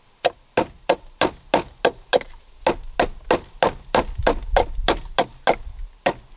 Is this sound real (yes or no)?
yes